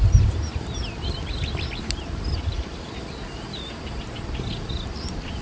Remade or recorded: recorded